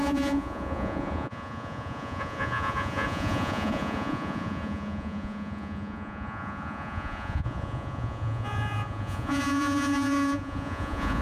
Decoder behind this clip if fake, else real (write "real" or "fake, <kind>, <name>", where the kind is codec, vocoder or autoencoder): fake, vocoder, Vocos